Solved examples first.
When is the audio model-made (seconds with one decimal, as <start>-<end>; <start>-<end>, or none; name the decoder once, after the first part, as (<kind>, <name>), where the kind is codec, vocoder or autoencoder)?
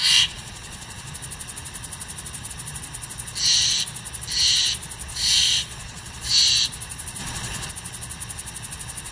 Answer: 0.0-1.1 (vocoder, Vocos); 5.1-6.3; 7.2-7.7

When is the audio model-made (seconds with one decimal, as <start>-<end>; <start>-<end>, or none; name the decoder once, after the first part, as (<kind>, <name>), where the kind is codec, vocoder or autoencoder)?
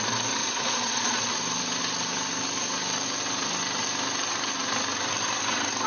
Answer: 0.4-1.3 (vocoder, Vocos)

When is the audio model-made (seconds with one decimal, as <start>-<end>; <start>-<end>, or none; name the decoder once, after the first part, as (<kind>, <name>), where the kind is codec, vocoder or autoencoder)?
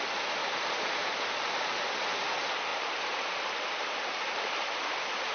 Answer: 0.4-1.1 (vocoder, BigVGAN v2); 2.7-4.0